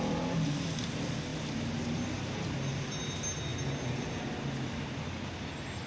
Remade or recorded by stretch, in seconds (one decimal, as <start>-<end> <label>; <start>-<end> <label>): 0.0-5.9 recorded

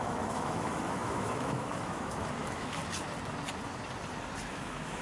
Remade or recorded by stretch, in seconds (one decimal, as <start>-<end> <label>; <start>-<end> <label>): 0.0-2.8 remade; 2.8-4.5 recorded; 4.5-5.0 remade

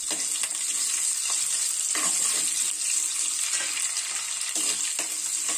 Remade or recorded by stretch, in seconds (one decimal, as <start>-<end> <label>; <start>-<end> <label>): 0.0-5.6 recorded

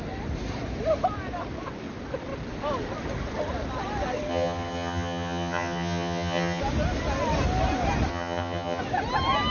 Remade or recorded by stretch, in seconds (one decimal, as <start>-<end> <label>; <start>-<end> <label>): 0.0-4.3 recorded; 4.3-6.6 remade; 6.6-8.1 recorded; 8.1-8.8 remade; 8.8-9.5 recorded

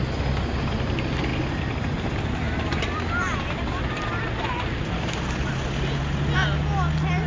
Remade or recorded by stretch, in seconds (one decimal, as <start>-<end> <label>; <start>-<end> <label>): 0.0-7.3 recorded